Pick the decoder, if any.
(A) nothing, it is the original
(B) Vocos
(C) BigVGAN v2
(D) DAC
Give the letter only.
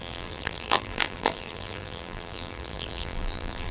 C